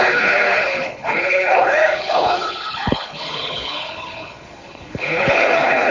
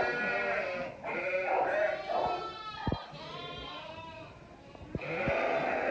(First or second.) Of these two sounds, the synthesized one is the first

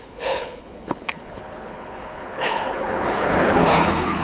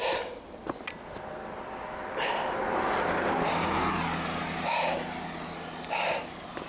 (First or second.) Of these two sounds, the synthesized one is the first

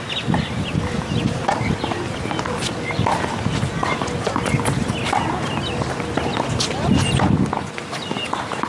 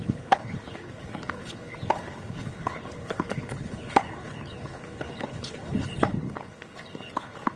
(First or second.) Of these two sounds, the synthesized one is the second